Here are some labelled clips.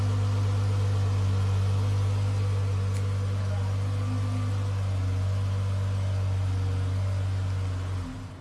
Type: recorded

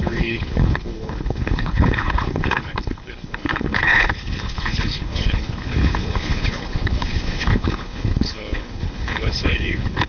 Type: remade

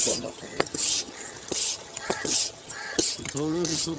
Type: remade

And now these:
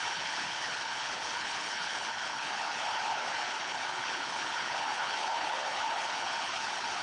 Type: remade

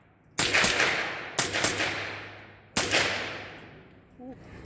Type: recorded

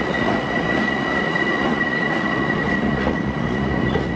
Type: remade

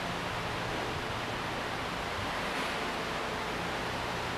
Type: recorded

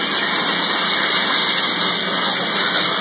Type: recorded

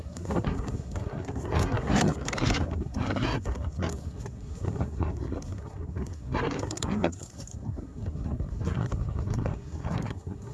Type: remade